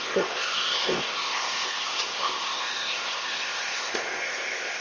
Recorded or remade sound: remade